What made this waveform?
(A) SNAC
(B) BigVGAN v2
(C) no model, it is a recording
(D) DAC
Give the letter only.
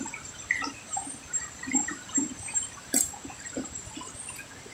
B